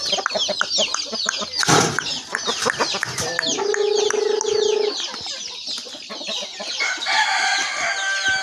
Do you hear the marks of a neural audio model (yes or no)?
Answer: no